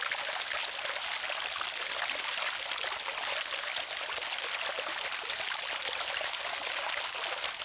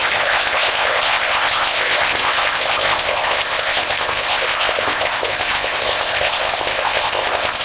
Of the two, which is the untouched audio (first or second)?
first